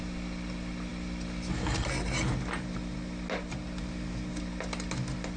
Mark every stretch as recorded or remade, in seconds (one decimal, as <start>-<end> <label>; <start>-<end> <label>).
0.0-5.4 recorded